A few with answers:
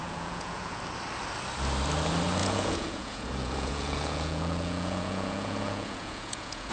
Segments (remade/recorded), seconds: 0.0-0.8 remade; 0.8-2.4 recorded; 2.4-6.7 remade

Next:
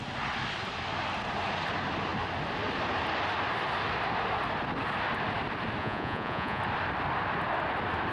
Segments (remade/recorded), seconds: 0.0-5.8 recorded; 5.8-6.6 remade; 6.6-8.1 recorded